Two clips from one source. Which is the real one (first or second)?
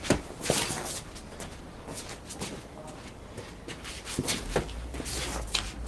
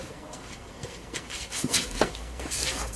first